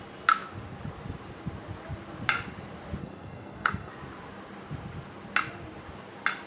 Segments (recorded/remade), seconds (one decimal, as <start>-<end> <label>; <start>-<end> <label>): 0.0-3.0 recorded; 3.0-3.9 remade; 3.9-6.5 recorded